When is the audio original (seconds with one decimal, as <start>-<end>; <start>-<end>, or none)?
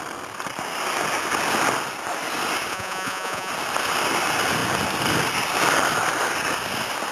0.0-2.7; 3.5-7.1